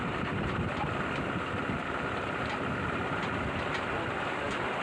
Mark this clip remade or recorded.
recorded